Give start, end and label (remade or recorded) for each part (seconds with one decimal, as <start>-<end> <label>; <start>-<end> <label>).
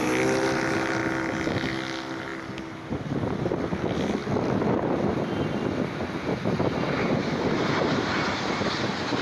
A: 0.0-9.2 recorded